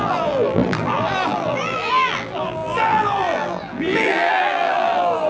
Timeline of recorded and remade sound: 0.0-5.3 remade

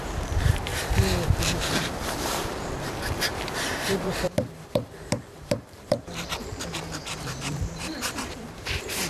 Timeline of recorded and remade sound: 0.0-0.7 remade; 0.7-1.4 recorded; 1.4-9.1 remade

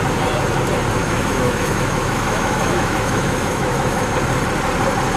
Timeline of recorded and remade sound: 0.0-1.0 recorded; 1.0-4.1 remade; 4.1-5.2 recorded

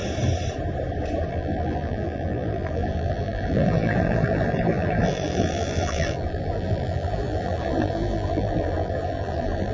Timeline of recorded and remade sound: 0.0-1.3 recorded; 1.3-9.7 remade

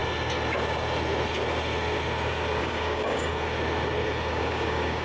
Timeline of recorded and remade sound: 0.0-2.6 recorded; 2.6-3.3 remade; 3.3-4.3 recorded; 4.3-5.0 remade